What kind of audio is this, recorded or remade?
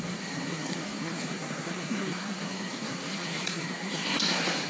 remade